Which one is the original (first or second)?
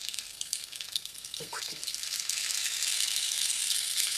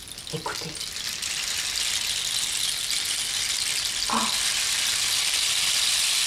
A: second